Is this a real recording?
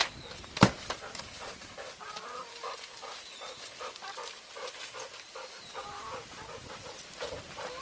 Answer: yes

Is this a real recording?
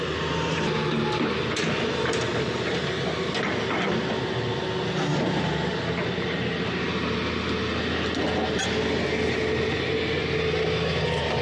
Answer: yes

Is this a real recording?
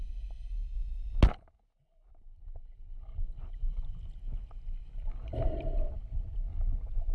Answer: yes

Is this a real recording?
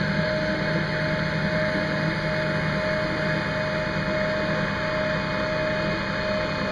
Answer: yes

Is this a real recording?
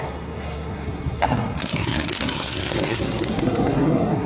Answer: no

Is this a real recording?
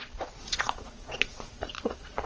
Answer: no